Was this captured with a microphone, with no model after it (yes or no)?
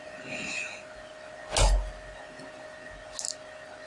yes